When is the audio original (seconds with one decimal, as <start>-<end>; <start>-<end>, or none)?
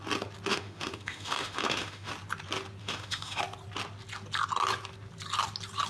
0.0-0.5; 2.1-2.8; 3.4-5.9